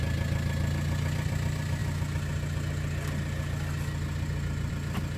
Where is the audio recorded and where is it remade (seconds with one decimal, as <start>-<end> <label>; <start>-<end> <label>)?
0.0-5.2 recorded